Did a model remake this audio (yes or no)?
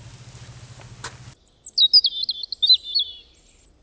no